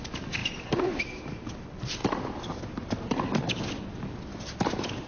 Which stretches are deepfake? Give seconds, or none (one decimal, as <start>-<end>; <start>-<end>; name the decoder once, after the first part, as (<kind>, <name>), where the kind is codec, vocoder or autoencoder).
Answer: 4.3-5.1 (vocoder, BigVGAN v2)